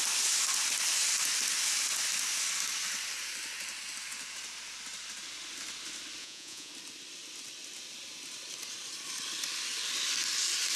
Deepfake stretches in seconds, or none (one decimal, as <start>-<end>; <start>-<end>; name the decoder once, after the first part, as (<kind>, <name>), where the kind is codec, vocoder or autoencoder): 6.2-6.7 (vocoder, Vocos)